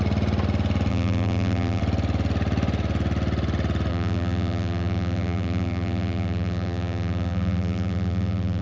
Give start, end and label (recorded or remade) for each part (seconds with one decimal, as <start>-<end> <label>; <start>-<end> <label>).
0.0-0.9 recorded; 0.9-1.8 remade; 1.8-3.9 recorded; 3.9-8.6 remade